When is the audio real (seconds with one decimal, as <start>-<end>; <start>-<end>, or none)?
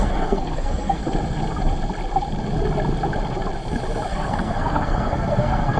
1.0-4.1